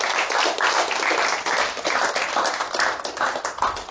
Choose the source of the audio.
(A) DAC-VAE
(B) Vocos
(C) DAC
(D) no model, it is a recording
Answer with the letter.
D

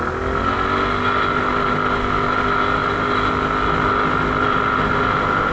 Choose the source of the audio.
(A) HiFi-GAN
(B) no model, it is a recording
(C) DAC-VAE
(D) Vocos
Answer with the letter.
B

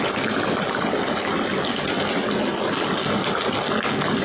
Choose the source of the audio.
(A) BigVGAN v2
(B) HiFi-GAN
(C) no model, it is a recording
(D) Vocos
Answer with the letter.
C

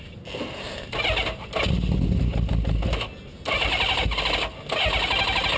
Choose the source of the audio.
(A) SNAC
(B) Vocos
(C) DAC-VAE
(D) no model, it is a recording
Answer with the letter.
D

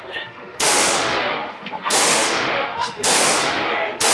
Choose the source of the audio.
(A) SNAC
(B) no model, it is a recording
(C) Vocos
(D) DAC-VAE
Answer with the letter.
D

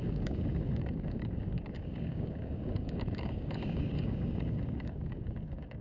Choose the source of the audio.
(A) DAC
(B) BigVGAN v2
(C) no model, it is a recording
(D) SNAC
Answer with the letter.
A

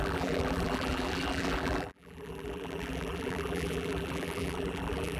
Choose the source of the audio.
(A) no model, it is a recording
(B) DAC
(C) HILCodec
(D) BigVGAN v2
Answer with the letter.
D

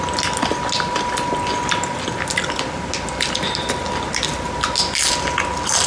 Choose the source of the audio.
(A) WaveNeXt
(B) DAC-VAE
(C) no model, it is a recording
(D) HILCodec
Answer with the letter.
C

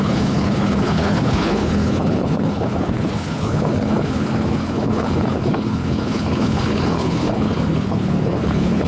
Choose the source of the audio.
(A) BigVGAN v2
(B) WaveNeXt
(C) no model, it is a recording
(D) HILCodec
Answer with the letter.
D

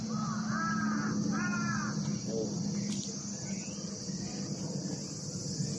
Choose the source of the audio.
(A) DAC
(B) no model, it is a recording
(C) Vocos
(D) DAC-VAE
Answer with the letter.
B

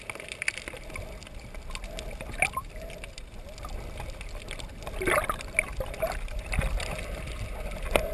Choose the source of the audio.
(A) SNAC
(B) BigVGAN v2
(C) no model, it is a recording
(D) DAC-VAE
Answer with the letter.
C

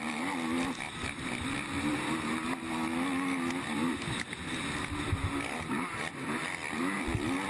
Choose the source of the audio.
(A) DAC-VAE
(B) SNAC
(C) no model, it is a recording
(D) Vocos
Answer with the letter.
C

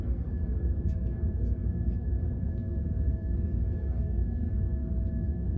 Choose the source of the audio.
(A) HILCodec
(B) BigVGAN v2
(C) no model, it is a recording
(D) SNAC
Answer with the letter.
D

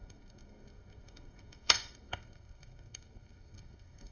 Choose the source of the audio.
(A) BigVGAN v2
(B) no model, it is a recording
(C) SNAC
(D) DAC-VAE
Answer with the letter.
C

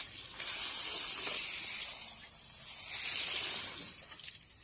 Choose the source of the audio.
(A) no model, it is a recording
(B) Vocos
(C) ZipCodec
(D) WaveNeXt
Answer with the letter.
A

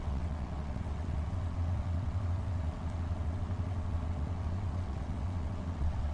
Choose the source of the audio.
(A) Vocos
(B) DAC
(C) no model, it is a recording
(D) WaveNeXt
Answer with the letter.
D